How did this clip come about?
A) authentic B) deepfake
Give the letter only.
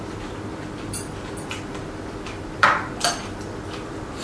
B